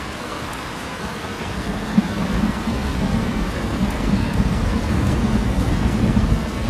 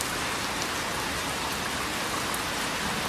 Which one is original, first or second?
second